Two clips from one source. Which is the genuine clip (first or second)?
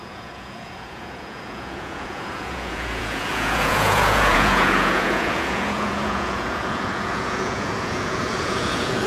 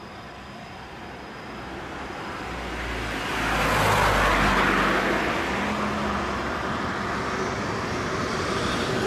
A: second